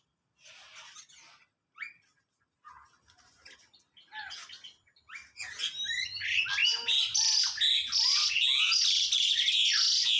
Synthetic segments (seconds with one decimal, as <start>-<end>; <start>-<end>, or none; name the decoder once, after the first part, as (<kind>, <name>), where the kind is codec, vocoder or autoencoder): none